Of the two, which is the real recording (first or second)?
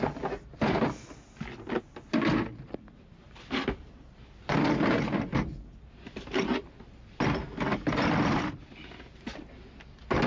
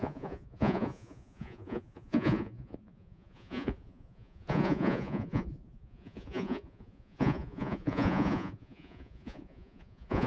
first